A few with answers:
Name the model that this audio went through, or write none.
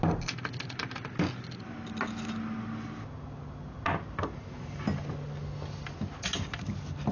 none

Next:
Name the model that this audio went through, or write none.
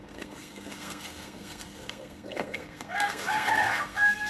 codec, SNAC